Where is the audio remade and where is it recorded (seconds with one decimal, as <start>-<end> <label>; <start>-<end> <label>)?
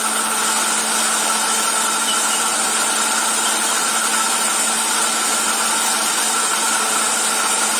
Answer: 0.0-7.8 recorded